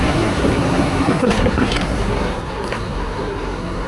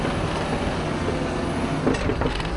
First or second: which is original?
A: second